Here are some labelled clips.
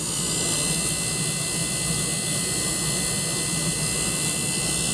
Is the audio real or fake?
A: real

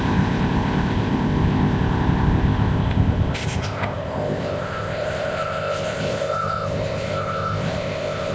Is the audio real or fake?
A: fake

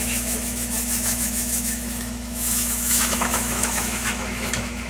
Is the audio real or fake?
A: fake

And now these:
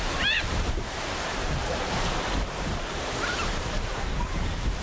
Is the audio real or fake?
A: fake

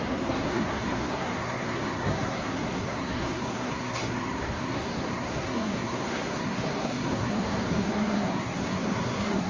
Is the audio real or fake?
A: fake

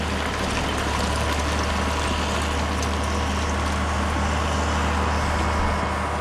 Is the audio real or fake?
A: real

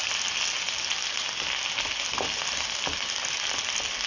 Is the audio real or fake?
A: real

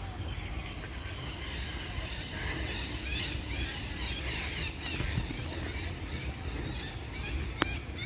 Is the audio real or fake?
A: real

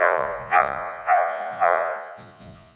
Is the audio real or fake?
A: fake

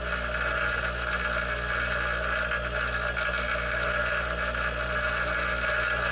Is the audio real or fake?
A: real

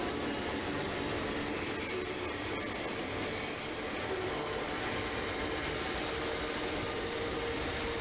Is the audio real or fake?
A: real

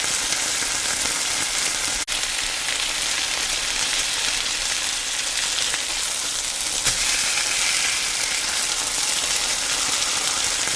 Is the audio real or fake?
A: real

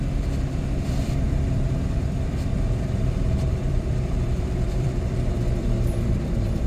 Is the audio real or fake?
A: fake